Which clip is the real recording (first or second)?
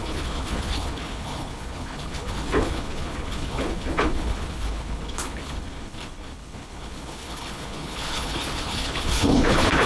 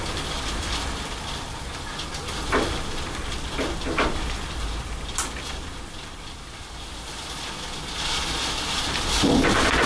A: second